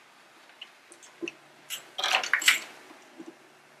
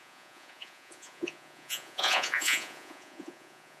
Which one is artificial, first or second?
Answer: second